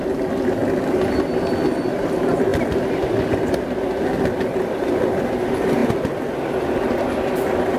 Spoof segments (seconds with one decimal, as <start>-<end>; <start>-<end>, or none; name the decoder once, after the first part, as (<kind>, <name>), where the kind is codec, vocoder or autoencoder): none